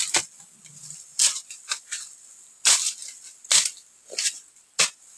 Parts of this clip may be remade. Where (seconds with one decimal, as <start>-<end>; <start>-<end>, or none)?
none